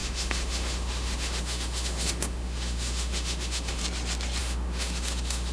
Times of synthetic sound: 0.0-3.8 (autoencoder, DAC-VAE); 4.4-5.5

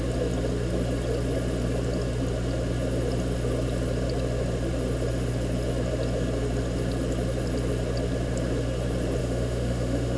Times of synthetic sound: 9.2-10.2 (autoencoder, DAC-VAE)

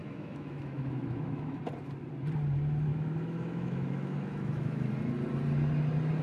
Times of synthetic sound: 0.0-1.6 (autoencoder, DAC-VAE); 2.9-4.9

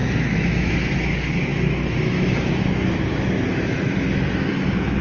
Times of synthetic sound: 0.0-5.0 (autoencoder, DAC-VAE)

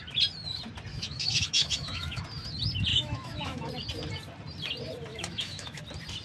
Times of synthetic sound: 0.9-2.2 (autoencoder, DAC-VAE); 2.9-3.7; 5.1-5.8

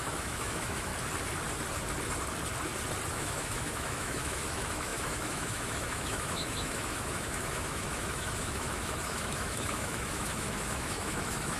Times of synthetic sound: 0.0-0.9 (autoencoder, DAC-VAE); 3.1-11.6